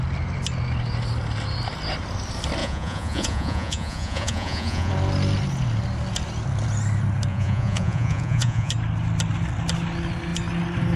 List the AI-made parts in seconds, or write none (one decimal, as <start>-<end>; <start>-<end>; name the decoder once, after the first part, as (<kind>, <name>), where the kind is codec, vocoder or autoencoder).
2.6-4.9 (vocoder, Vocos); 7.3-8.7